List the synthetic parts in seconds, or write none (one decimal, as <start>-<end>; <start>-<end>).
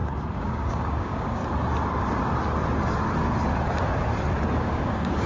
0.0-1.4; 4.6-5.3